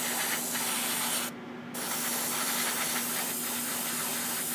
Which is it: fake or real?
real